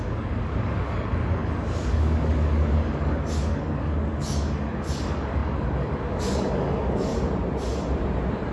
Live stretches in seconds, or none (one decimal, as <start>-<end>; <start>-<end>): 7.1-8.5

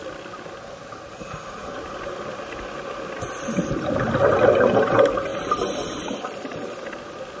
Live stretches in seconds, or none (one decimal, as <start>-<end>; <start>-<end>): 0.0-1.6; 2.1-5.3; 6.7-7.4